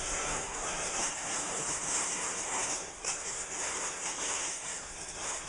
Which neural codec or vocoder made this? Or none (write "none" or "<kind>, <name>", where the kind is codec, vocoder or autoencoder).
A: codec, SNAC